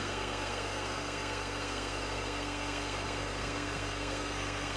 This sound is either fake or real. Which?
fake